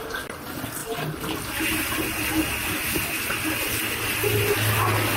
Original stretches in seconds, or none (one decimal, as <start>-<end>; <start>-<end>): 0.0-5.2

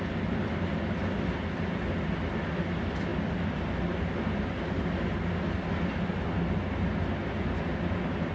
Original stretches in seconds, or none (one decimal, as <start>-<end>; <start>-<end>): 0.0-8.3

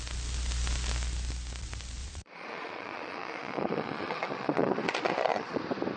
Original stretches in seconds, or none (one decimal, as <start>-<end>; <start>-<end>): 0.0-2.0; 5.6-6.0

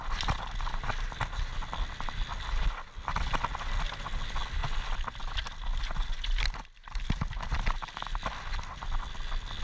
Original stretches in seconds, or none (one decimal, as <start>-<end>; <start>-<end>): 0.0-9.6

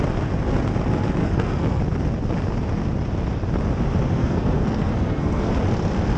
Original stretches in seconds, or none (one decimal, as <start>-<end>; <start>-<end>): 0.0-1.2; 1.8-4.2; 5.5-6.2

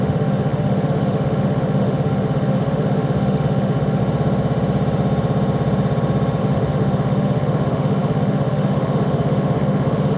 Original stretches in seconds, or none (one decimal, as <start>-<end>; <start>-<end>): 4.0-6.4

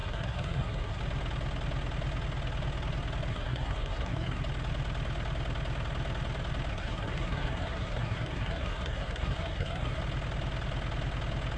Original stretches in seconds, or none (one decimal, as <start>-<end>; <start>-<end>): 1.0-3.3; 4.4-6.7; 10.0-11.6

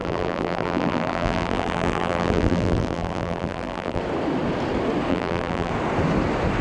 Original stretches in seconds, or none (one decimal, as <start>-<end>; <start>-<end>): 4.0-5.1; 5.7-6.6